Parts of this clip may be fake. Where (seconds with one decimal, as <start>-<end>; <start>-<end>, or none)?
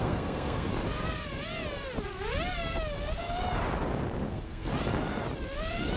0.0-0.7; 4.3-4.7